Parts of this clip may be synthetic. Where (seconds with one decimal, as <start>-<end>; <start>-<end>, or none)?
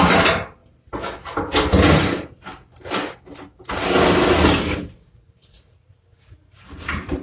0.0-0.6; 4.6-7.2